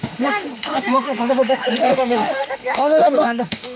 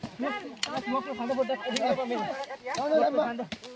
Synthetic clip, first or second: first